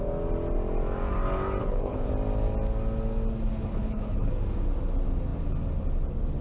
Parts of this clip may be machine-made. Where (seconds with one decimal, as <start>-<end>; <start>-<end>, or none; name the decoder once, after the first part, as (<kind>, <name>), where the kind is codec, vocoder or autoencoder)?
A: 1.6-2.1 (codec, HILCodec); 3.7-4.3